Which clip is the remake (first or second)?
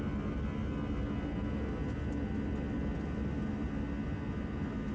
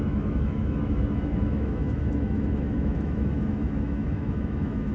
second